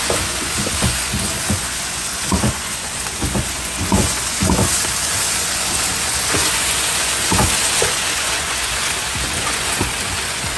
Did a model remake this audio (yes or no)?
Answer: yes